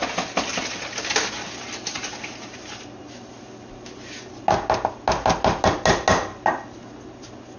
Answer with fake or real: real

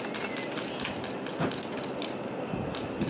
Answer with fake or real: real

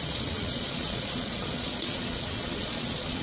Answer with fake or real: fake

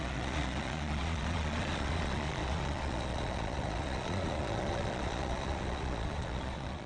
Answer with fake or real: fake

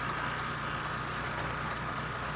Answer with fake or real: real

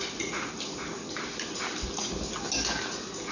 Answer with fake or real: real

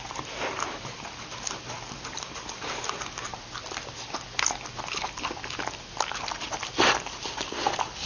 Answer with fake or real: real